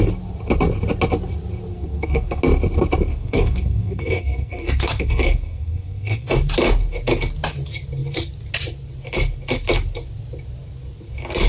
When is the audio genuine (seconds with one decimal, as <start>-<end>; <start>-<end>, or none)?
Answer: 0.0-1.7; 2.4-3.1; 6.3-11.5